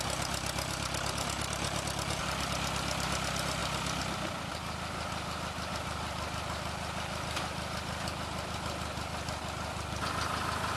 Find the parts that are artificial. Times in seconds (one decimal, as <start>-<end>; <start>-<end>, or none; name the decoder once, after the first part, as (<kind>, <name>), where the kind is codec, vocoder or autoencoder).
none